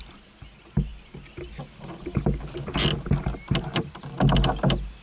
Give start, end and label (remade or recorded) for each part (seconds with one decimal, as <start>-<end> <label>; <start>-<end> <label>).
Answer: 0.0-5.0 recorded